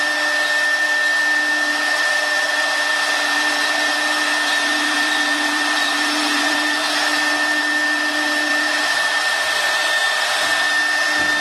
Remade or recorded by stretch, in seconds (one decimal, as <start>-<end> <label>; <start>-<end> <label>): 0.0-1.7 recorded; 1.7-6.6 remade; 6.6-8.5 recorded; 8.5-9.9 remade; 9.9-11.4 recorded